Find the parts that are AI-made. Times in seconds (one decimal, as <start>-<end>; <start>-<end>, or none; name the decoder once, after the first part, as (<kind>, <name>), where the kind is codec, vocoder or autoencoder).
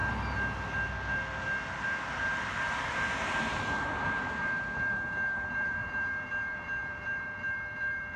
3.4-8.2 (vocoder, BigVGAN v2)